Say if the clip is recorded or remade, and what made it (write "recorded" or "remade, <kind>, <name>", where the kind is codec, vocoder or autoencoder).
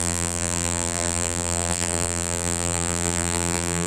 remade, vocoder, BigVGAN v2